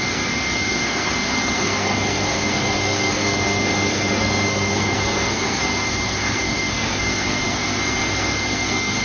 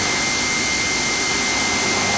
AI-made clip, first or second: first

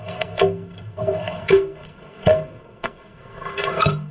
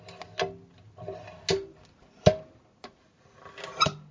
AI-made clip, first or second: first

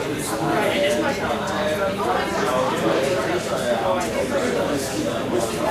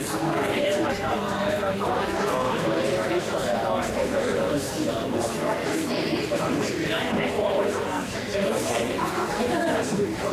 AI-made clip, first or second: second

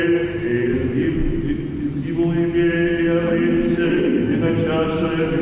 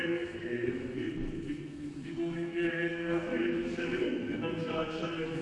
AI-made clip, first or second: second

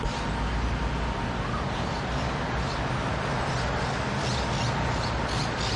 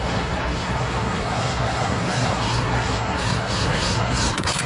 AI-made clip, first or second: second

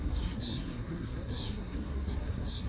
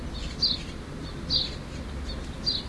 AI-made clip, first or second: first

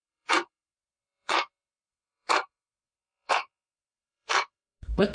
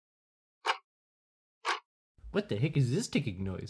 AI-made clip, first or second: first